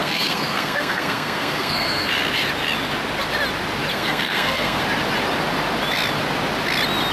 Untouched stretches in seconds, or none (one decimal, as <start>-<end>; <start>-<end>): 2.1-3.9; 4.8-7.1